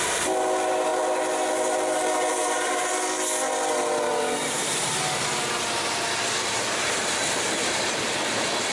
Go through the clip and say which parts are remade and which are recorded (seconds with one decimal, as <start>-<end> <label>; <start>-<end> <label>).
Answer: 0.0-2.4 recorded; 2.4-2.9 remade; 2.9-4.4 recorded; 4.4-4.9 remade; 4.9-8.7 recorded